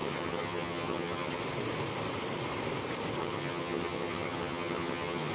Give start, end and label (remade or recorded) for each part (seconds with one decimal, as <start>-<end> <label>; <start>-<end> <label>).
0.0-1.4 remade; 1.4-3.2 recorded; 3.2-5.3 remade